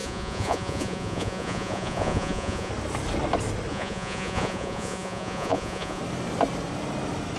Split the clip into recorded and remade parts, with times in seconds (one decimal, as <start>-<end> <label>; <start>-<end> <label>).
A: 0.0-2.7 remade; 2.7-3.7 recorded; 3.7-6.0 remade; 6.0-7.4 recorded